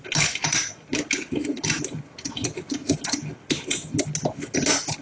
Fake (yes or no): no